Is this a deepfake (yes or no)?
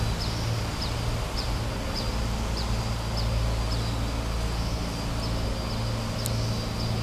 no